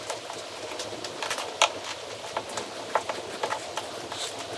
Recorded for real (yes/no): yes